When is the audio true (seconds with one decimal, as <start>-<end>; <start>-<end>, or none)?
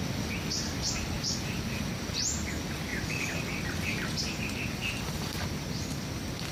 0.0-2.9; 3.9-4.8; 6.1-6.5